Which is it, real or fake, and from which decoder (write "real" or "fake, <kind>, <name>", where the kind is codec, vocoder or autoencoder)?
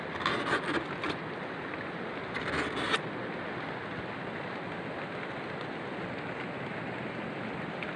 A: real